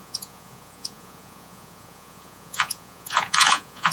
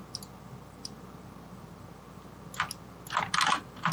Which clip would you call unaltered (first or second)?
second